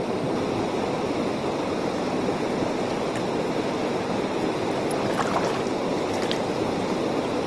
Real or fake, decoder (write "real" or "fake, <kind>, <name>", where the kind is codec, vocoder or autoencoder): real